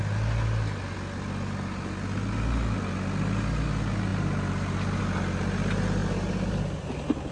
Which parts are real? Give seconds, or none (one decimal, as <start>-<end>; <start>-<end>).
0.0-7.3